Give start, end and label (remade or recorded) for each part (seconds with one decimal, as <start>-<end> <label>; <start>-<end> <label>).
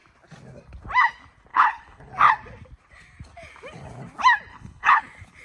0.0-1.5 recorded; 1.5-2.1 remade; 2.1-4.5 recorded; 4.5-5.0 remade; 5.0-5.4 recorded